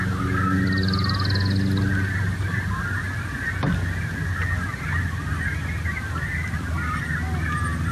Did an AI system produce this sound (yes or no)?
no